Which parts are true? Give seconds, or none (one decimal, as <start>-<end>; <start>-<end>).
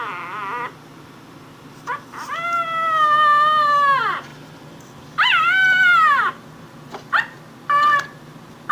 0.0-8.7